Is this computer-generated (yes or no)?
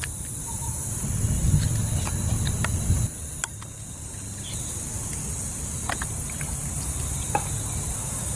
no